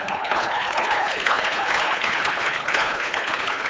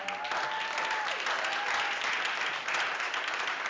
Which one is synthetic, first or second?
first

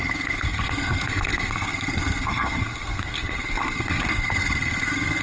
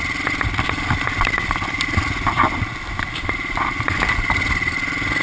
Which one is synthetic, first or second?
first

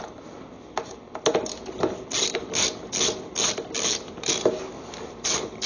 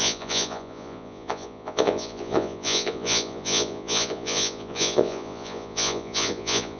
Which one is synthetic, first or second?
second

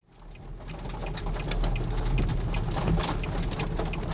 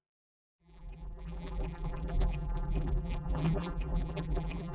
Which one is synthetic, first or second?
second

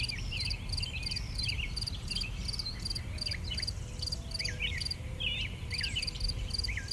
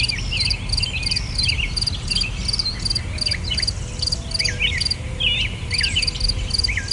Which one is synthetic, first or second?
first